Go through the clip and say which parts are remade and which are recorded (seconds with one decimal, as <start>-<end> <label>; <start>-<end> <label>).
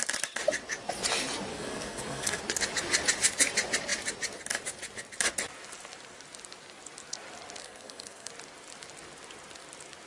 0.0-1.5 recorded; 1.5-2.4 remade; 2.4-7.6 recorded; 7.6-8.3 remade; 8.3-10.1 recorded